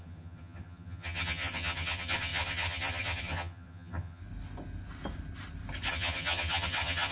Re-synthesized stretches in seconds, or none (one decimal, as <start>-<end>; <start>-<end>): 0.0-4.2; 5.9-7.1